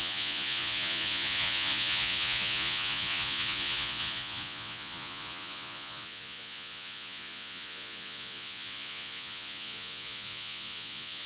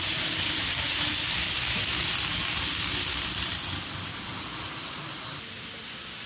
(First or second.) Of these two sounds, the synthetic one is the first